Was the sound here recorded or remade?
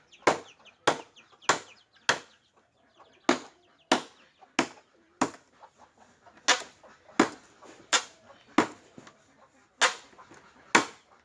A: recorded